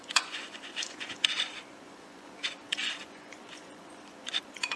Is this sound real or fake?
fake